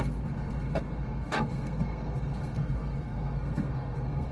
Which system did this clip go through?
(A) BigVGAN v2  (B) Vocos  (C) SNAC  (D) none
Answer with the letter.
C